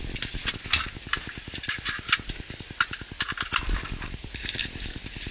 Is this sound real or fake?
real